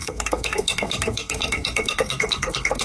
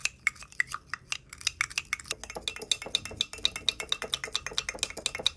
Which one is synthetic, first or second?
first